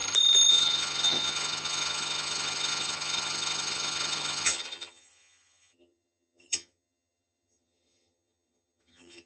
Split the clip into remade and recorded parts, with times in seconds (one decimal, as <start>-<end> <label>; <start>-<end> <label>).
0.0-0.5 recorded; 0.5-9.3 remade